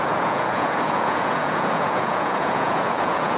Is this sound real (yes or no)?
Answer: no